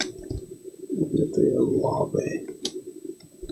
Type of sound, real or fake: real